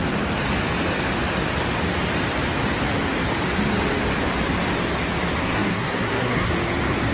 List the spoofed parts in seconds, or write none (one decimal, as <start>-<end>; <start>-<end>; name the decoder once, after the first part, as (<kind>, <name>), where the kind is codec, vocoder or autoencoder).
5.4-6.5 (codec, SNAC)